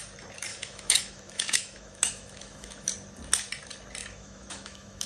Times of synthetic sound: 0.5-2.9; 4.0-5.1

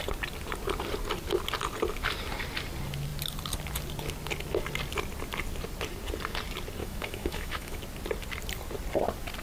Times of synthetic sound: 6.8-7.8

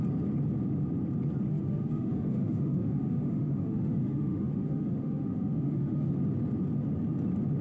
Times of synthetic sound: 1.5-6.1

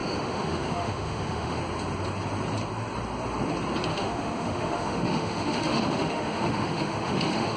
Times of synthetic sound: 0.0-1.6; 3.9-7.6

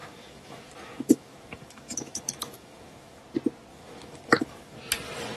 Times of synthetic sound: 0.0-3.2; 3.7-4.8

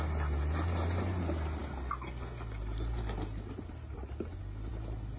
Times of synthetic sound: none